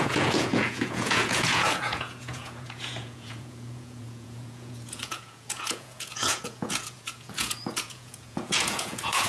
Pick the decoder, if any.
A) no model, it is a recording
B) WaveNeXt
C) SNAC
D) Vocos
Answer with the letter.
D